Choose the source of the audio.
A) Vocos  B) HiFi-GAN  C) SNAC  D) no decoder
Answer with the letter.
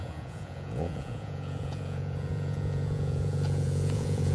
A